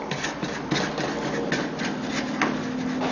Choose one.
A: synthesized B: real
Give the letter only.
B